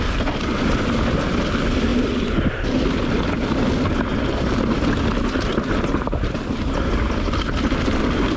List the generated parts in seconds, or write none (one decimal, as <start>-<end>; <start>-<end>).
none